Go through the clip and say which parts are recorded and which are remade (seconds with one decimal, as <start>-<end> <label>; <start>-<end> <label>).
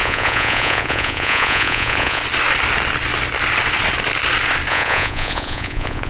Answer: 0.0-2.2 remade; 2.2-4.7 recorded; 4.7-6.1 remade